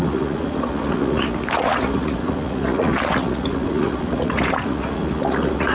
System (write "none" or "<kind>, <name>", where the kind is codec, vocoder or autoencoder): vocoder, Vocos